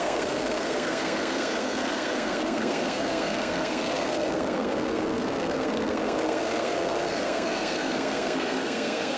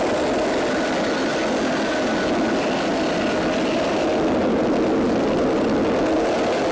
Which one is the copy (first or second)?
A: first